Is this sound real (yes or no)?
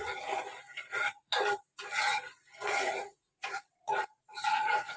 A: no